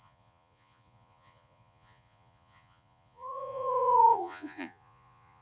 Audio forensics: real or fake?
fake